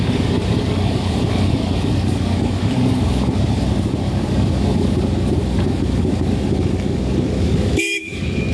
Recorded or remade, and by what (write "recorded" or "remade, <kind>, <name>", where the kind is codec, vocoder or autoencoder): remade, codec, DAC